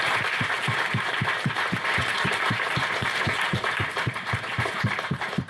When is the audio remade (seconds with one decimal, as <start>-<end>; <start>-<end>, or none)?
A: 0.0-5.5